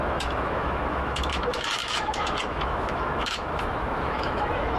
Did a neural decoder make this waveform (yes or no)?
yes